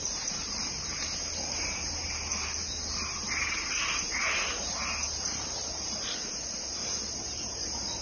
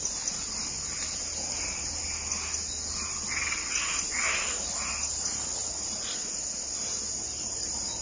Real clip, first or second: second